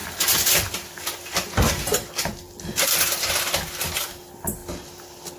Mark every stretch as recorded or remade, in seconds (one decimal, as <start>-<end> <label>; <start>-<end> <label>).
0.0-5.4 recorded